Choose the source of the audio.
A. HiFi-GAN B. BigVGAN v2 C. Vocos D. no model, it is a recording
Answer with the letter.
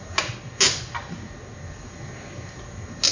D